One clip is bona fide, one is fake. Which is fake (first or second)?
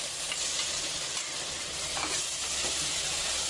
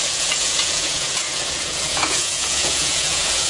second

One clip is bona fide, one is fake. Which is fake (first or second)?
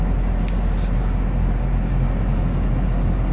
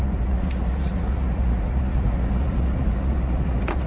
second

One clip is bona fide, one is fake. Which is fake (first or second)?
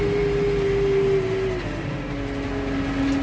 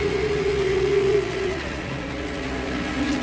second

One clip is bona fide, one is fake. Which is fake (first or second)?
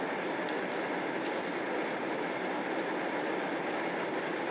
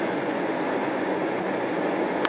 second